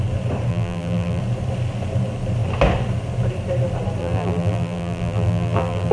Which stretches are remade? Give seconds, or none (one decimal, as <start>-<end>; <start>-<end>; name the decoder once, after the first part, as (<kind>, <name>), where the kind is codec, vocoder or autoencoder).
0.5-1.2 (vocoder, BigVGAN v2); 4.0-5.9